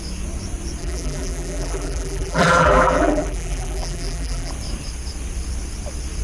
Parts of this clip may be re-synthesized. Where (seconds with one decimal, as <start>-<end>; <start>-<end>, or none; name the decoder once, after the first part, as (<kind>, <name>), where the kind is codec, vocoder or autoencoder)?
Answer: 0.8-4.5 (vocoder, BigVGAN v2)